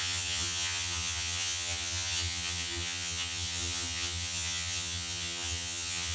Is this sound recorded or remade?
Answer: remade